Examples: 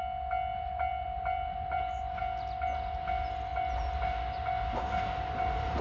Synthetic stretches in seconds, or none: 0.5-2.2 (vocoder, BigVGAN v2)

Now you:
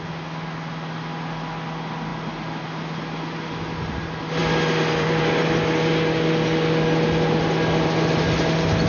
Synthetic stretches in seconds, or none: none

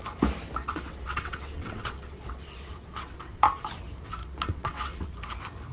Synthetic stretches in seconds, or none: 0.6-3.4 (vocoder, WaveNeXt); 4.2-5.1

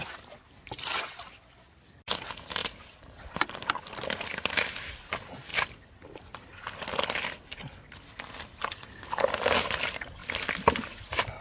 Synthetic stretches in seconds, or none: 2.6-4.4 (vocoder, BigVGAN v2); 5.5-8.3

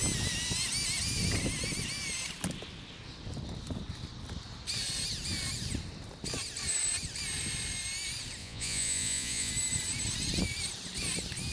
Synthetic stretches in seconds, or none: 8.4-9.5 (vocoder, Vocos)

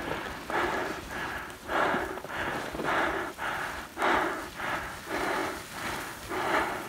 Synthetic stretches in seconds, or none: 0.8-3.3 (vocoder, BigVGAN v2)